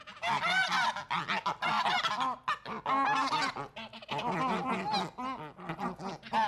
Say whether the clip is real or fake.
real